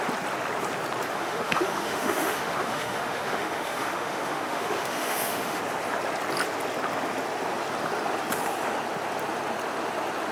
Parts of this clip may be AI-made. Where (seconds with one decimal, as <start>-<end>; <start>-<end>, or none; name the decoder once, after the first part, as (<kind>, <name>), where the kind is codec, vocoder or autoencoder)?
1.1-5.6 (autoencoder, DAC-VAE)